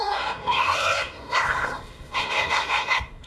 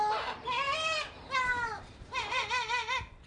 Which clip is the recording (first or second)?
second